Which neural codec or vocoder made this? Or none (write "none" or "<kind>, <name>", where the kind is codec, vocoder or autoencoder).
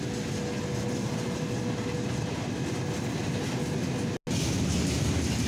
none